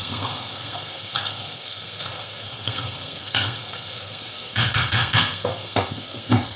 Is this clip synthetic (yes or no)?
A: yes